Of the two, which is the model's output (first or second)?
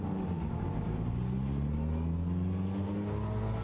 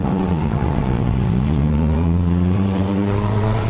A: second